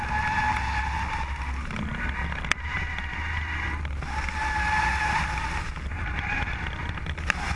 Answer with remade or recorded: recorded